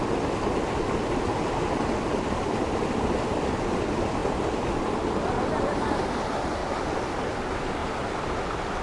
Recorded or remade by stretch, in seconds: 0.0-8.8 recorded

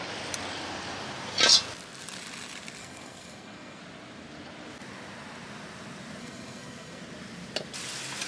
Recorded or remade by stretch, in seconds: 0.0-2.8 recorded; 2.8-3.8 remade; 3.8-6.2 recorded; 6.2-7.0 remade; 7.0-8.3 recorded

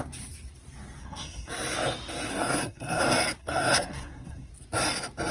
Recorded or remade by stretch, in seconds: 0.0-1.0 recorded; 1.0-1.5 remade; 1.5-2.3 recorded; 2.3-3.0 remade; 3.0-3.4 recorded; 3.4-4.5 remade; 4.5-5.3 recorded

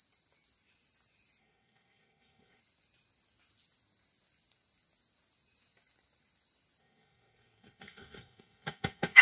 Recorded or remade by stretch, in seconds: 0.0-1.4 recorded; 1.4-2.6 remade; 2.6-6.8 recorded; 6.8-9.2 remade

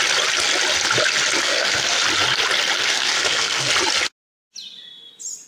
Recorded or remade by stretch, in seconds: 0.0-1.4 recorded; 1.4-2.0 remade; 2.0-2.8 recorded; 2.8-3.7 remade; 3.7-5.5 recorded

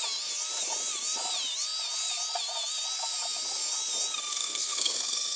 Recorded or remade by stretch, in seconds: 0.0-4.3 recorded; 4.3-5.4 remade

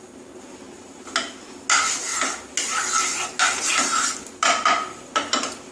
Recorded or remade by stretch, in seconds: 0.0-5.7 recorded

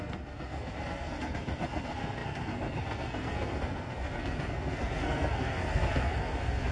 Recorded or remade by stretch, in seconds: 0.0-6.7 remade